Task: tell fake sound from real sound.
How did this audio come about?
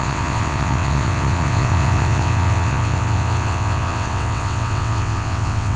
fake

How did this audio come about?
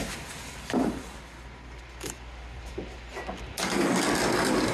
real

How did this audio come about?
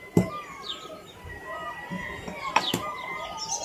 real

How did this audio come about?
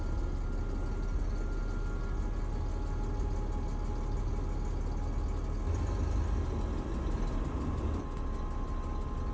real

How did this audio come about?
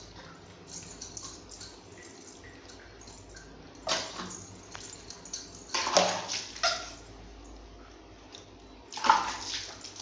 real